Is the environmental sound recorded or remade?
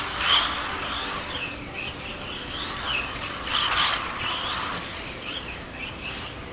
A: recorded